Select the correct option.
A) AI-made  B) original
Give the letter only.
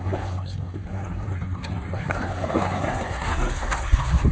A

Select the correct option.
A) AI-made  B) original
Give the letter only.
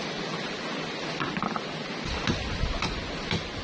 B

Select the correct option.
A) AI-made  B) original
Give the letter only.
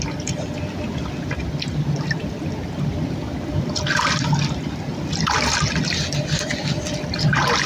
B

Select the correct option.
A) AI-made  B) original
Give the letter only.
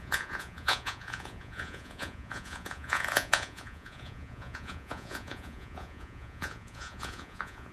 A